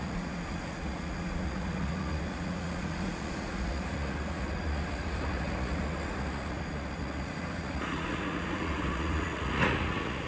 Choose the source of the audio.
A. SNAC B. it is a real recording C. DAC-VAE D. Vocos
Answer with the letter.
D